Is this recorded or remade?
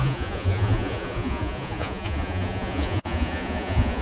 remade